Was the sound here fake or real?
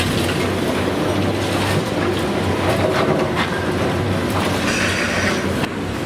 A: real